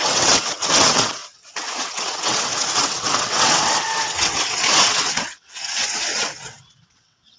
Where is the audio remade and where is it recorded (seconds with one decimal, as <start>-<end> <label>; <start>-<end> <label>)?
0.0-7.4 remade